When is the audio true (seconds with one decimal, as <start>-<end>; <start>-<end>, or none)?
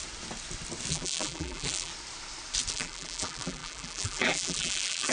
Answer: 0.0-0.9; 1.9-2.7